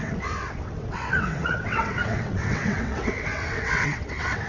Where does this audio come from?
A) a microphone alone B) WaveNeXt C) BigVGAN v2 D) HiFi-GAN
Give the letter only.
B